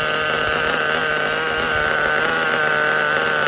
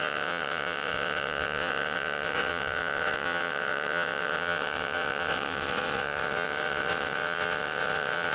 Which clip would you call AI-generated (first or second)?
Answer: second